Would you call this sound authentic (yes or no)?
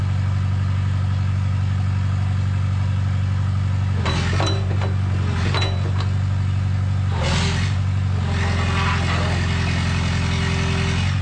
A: yes